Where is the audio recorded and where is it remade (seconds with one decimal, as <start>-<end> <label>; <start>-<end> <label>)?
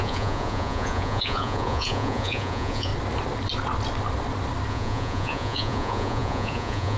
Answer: 0.0-2.9 remade; 2.9-4.7 recorded; 4.7-7.0 remade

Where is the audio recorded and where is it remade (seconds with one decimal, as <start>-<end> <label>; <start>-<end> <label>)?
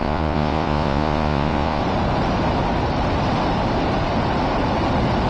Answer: 0.0-1.8 remade; 1.8-5.3 recorded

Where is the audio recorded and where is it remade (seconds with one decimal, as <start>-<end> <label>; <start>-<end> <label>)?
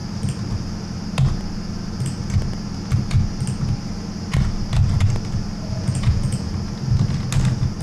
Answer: 0.0-5.7 recorded; 5.7-6.5 remade; 6.5-7.8 recorded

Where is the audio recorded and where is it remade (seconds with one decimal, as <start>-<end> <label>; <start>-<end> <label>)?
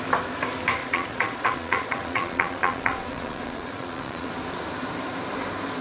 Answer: 0.0-0.8 recorded; 0.8-4.3 remade; 4.3-5.8 recorded